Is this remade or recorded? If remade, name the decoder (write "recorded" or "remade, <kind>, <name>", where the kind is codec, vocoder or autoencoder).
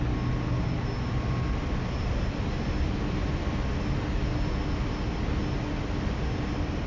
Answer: recorded